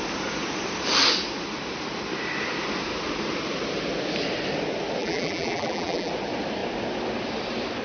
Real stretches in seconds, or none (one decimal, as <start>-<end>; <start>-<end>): 0.0-5.0; 6.1-7.8

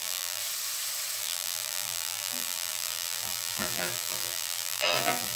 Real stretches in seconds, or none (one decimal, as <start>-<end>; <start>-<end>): 0.4-1.2

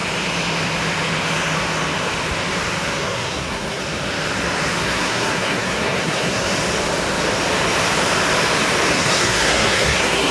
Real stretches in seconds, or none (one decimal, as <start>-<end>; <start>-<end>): 0.0-3.0; 3.8-4.8; 6.5-8.9

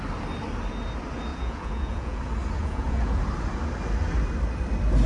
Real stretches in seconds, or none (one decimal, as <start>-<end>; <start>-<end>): 0.0-1.3; 2.2-2.6; 3.2-5.1

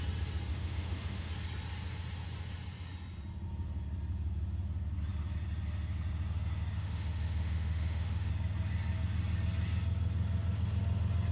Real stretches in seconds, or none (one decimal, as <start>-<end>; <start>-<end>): 0.0-0.5; 1.3-6.8; 8.3-11.3

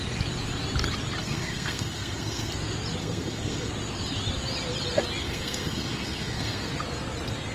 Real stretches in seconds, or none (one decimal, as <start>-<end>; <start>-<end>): 0.0-1.2; 2.5-3.0; 3.7-5.2; 6.7-7.5

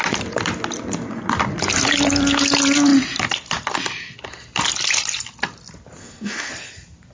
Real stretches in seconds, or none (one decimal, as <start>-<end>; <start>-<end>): 0.0-6.0; 6.5-7.1

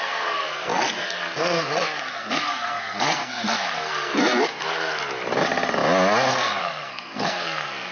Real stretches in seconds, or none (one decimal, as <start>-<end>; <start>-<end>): 5.0-6.3